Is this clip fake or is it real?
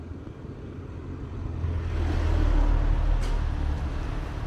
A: real